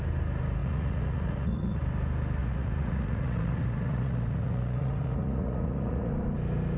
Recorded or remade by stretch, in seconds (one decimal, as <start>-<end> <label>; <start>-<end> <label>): 0.0-0.6 recorded; 0.6-1.8 remade; 1.8-2.4 recorded; 2.4-6.1 remade; 6.1-6.8 recorded